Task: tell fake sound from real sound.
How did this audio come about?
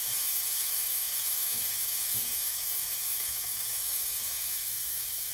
fake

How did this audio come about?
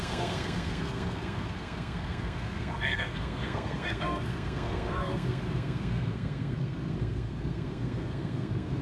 fake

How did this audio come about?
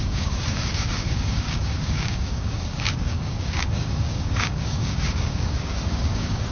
fake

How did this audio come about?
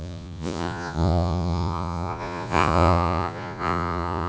fake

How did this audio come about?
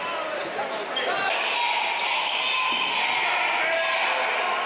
real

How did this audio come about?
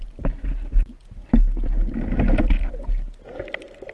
real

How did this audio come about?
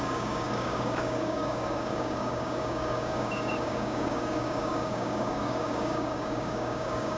fake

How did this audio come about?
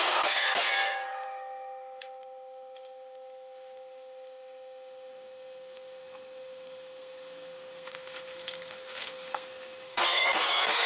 fake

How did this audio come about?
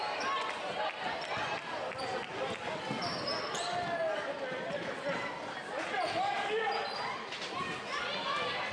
real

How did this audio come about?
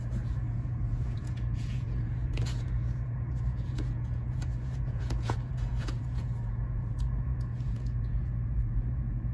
fake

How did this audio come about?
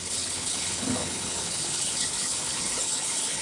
fake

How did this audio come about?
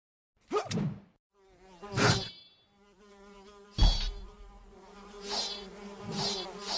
real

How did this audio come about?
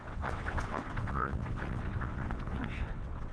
fake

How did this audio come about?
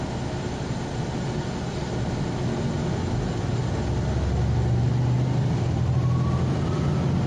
real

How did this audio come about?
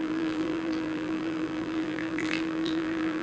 fake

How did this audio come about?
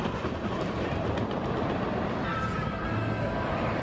real